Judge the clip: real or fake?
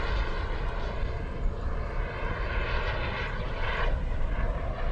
real